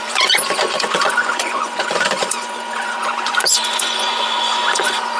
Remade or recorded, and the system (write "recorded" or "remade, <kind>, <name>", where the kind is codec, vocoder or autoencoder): remade, vocoder, Vocos